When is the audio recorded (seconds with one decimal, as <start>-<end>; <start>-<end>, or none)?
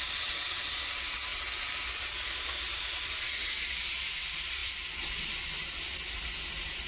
0.0-6.9